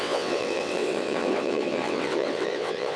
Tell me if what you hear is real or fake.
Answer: fake